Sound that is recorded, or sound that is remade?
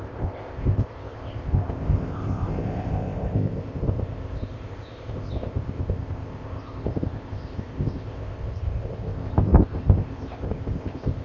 remade